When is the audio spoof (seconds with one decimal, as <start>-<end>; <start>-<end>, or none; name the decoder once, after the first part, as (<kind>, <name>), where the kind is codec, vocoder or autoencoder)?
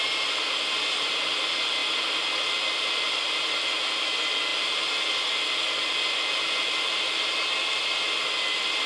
none